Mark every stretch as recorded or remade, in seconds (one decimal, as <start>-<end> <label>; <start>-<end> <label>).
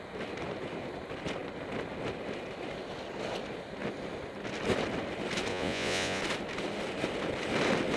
0.0-5.5 recorded; 5.5-6.2 remade; 6.2-8.0 recorded